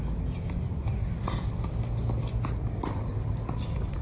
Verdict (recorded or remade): recorded